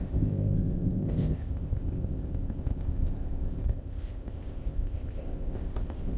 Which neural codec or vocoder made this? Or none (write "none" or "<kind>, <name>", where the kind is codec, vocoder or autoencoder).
codec, ZipCodec